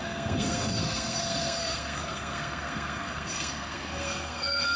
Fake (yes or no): yes